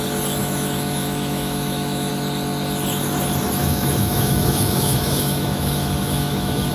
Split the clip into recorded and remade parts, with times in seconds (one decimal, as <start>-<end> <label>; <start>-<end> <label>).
0.0-0.4 recorded; 0.4-2.1 remade; 2.1-3.6 recorded; 3.6-6.7 remade